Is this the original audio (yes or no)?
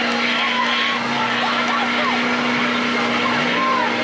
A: yes